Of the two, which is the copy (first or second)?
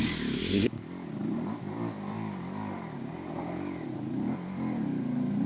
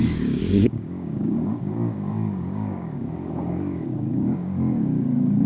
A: second